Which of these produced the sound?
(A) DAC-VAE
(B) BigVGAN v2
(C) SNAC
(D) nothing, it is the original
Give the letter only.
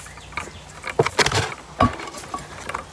D